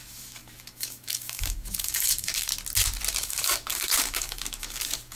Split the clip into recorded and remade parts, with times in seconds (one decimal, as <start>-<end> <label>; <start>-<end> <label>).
0.0-2.5 remade; 2.5-3.2 recorded; 3.2-5.2 remade